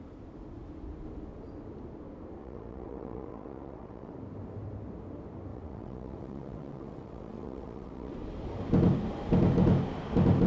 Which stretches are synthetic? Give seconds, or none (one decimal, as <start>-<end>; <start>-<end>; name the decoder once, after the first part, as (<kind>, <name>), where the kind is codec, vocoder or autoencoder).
2.4-4.1 (vocoder, WaveNeXt); 5.5-8.1